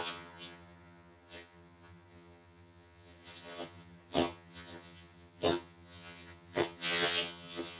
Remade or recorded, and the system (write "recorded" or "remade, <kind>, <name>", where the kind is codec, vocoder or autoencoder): remade, vocoder, HiFi-GAN